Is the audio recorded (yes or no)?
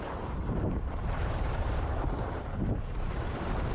no